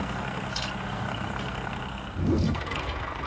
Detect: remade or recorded remade